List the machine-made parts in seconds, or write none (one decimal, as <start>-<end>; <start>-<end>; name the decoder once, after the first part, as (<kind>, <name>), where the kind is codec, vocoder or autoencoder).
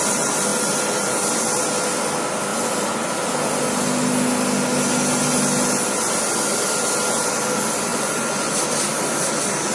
7.9-8.5 (vocoder, Vocos)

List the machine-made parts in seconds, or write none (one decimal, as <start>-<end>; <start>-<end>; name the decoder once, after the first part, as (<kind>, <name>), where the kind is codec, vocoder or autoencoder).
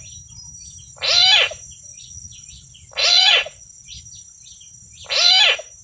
1.9-4.0 (vocoder, Vocos)